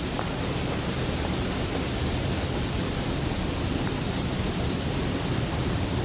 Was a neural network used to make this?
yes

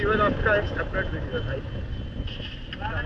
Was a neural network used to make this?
no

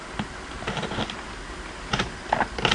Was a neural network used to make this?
no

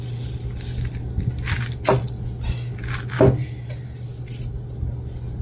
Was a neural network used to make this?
no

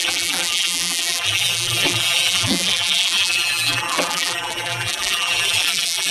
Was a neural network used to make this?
yes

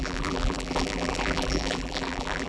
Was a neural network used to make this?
yes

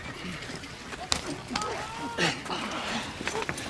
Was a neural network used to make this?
no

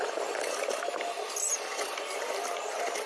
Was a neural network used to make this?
no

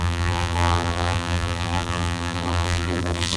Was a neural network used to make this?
yes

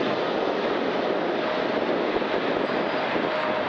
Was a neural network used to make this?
no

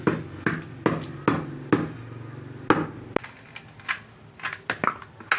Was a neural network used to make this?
no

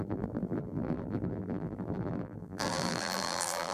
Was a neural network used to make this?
yes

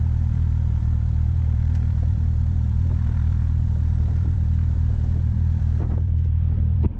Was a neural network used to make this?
yes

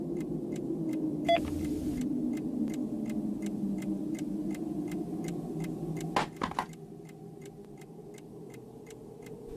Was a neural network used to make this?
no